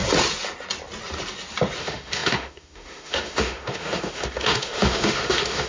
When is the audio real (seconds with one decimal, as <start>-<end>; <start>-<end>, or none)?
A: 0.0-1.8